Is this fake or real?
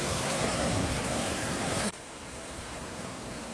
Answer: fake